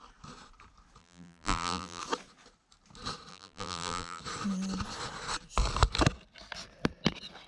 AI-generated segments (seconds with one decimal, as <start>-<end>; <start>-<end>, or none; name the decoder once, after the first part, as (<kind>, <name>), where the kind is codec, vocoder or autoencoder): 1.0-2.0 (vocoder, BigVGAN v2); 3.3-4.2